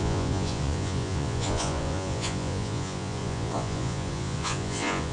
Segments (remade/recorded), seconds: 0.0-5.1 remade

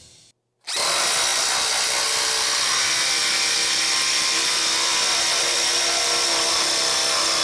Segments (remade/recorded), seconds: 0.0-7.4 recorded

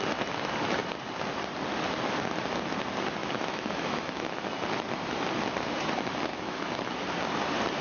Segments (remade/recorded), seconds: 0.0-3.2 recorded; 3.2-4.6 remade; 4.6-6.3 recorded; 6.3-6.9 remade; 6.9-7.8 recorded

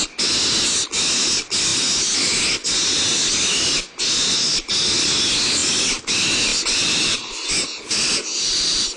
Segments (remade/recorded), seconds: 0.0-6.5 recorded; 6.5-9.0 remade

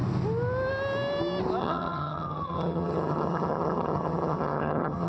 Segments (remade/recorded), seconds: 0.0-1.6 recorded; 1.6-5.1 remade

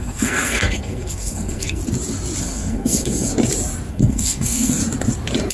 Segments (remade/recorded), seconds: 0.0-1.8 remade; 1.8-2.4 recorded; 2.4-3.3 remade; 3.3-3.9 recorded; 3.9-4.8 remade; 4.8-5.5 recorded

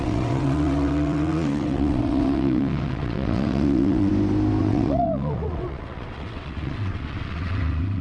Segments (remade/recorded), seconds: 0.0-4.1 remade; 4.1-4.6 recorded; 4.6-8.0 remade

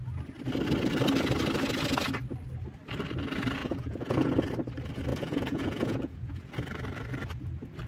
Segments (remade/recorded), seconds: 0.0-3.6 recorded; 3.6-4.3 remade; 4.3-5.1 recorded; 5.1-6.5 remade; 6.5-7.9 recorded